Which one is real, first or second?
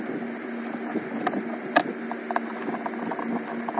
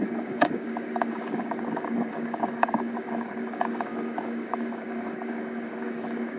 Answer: first